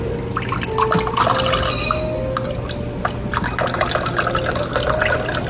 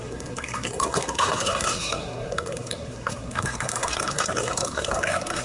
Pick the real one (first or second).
first